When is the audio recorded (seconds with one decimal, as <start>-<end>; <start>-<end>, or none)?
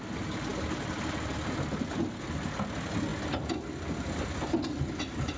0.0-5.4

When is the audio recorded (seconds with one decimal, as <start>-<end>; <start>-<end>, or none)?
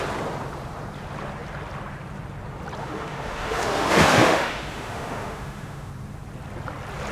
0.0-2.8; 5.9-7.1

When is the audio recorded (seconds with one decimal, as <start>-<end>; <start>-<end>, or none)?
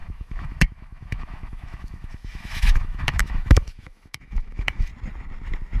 4.9-5.8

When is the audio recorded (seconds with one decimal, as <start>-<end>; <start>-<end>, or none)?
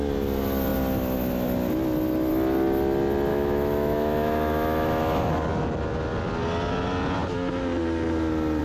0.0-3.3; 5.3-8.6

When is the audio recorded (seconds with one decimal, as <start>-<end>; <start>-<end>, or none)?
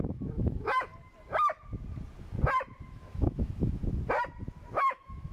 0.9-2.9; 3.8-4.7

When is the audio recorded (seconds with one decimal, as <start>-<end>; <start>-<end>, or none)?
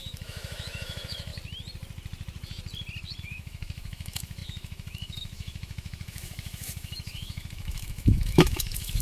1.3-3.2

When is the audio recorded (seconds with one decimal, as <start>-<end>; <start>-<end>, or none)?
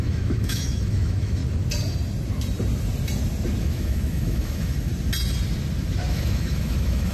1.4-3.6; 4.9-6.1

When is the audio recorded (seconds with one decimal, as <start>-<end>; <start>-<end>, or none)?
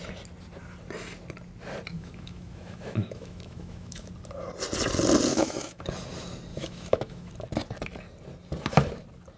0.0-1.9; 4.1-5.3; 5.8-6.5; 7.3-9.4